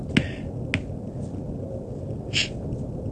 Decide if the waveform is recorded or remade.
recorded